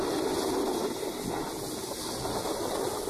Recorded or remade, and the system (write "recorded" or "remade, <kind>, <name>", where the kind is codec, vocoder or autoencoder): recorded